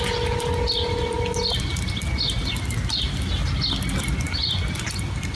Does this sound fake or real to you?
real